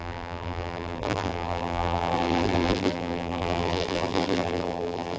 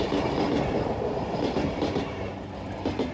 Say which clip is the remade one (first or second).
first